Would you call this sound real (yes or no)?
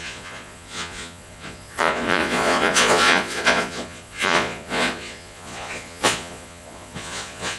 no